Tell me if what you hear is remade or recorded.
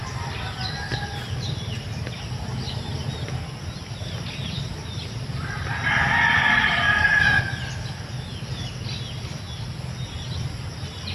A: recorded